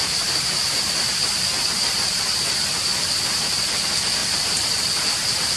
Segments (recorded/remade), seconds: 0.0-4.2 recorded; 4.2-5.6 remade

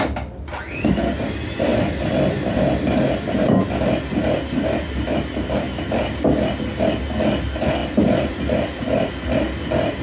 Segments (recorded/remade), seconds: 0.0-1.7 recorded; 1.7-3.3 remade; 3.3-7.8 recorded; 7.8-8.4 remade; 8.4-10.0 recorded

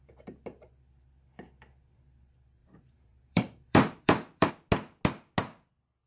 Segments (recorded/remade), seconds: 0.0-2.6 recorded; 2.6-4.5 remade; 4.5-6.1 recorded

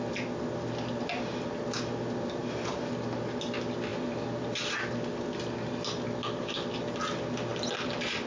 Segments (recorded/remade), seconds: 0.0-2.4 recorded; 2.4-2.9 remade; 2.9-8.3 recorded